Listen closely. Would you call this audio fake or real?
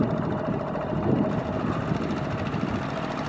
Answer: real